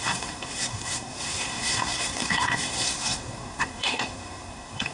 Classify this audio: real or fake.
fake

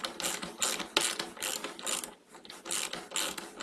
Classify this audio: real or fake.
real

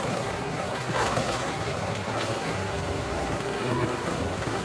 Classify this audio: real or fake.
fake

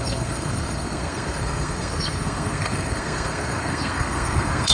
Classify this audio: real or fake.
fake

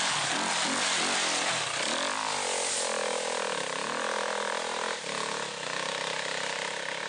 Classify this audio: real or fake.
real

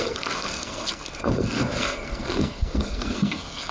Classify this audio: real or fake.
fake